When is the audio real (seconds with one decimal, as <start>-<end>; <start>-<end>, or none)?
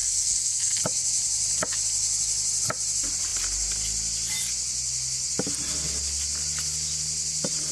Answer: 0.8-7.7